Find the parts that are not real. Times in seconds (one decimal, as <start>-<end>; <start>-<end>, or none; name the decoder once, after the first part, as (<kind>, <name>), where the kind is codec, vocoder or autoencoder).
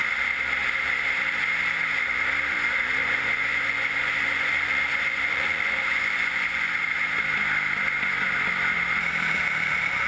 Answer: 3.0-6.7 (vocoder, Vocos)